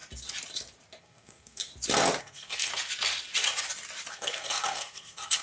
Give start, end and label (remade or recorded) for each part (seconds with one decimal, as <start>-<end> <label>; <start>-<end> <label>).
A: 0.0-1.0 recorded; 1.0-1.7 remade; 1.7-2.2 recorded; 2.2-2.7 remade; 2.7-4.1 recorded; 4.1-5.4 remade